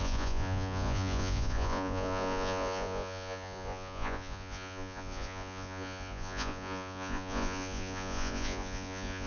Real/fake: fake